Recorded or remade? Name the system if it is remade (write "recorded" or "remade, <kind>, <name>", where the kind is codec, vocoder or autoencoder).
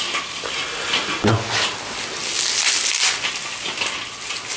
recorded